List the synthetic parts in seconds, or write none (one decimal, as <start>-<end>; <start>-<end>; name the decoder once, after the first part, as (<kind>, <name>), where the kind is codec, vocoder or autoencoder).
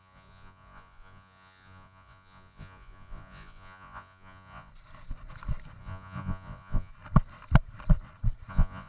0.0-4.7 (vocoder, Vocos); 5.8-6.9; 8.5-8.9